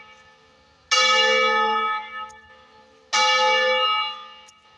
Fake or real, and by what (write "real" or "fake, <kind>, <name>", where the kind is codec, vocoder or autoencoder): real